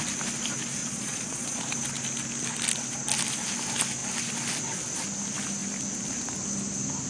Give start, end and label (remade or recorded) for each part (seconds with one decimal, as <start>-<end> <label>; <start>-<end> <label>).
0.0-0.8 recorded; 0.8-1.6 remade; 1.6-7.1 recorded